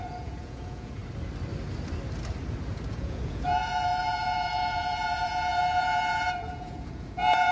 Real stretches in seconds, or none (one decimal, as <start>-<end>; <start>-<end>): 1.0-2.9